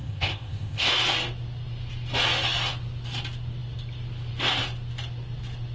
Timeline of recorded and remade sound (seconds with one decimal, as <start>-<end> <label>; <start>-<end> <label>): 0.0-0.9 remade; 0.9-5.7 recorded